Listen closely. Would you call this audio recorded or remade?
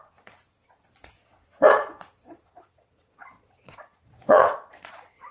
remade